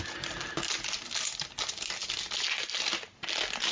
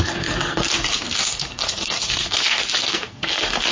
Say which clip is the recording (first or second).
first